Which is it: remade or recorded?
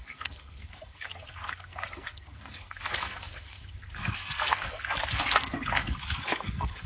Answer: remade